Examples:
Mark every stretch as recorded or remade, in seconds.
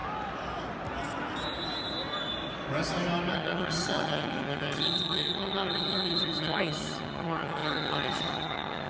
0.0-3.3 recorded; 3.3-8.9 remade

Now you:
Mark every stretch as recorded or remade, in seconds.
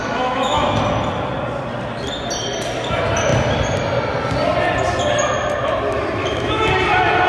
0.0-0.6 remade; 0.6-6.2 recorded; 6.2-6.7 remade; 6.7-7.3 recorded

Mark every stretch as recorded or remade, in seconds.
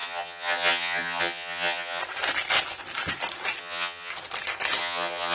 0.0-2.0 remade; 2.0-3.6 recorded; 3.6-4.1 remade; 4.1-4.8 recorded; 4.8-5.3 remade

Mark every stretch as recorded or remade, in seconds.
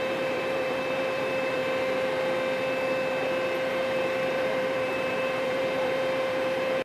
0.0-1.6 remade; 1.6-3.7 recorded; 3.7-6.8 remade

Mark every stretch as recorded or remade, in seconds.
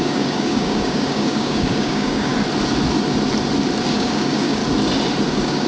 0.0-2.3 remade; 2.3-3.9 recorded; 3.9-4.6 remade; 4.6-5.3 recorded; 5.3-5.7 remade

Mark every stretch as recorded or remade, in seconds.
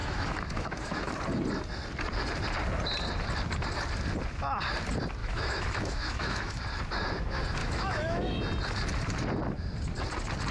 0.0-1.1 remade; 1.1-5.2 recorded; 5.2-6.6 remade; 6.6-7.6 recorded; 7.6-8.4 remade; 8.4-10.5 recorded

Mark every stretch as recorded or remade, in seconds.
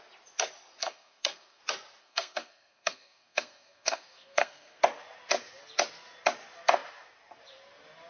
0.0-0.8 recorded; 0.8-1.6 remade; 1.6-2.0 recorded; 2.0-4.8 remade; 4.8-8.1 recorded